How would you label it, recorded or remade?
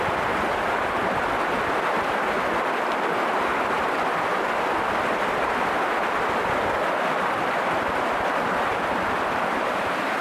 recorded